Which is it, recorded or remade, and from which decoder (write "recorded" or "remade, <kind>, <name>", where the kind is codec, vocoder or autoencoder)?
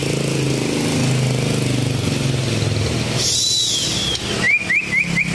recorded